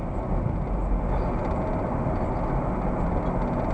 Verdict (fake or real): real